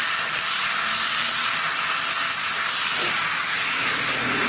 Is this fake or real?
real